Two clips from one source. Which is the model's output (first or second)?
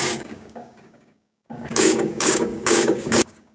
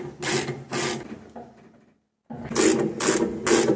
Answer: first